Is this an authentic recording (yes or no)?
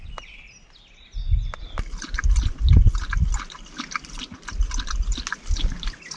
yes